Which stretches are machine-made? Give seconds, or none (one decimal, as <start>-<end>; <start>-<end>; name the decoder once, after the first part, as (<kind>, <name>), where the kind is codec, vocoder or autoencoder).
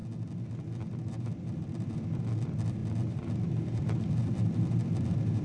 0.9-5.4 (vocoder, BigVGAN v2)